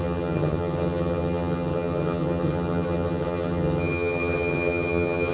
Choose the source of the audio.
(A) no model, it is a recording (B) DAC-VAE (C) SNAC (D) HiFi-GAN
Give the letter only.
D